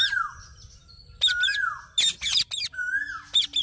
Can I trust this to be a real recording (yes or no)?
yes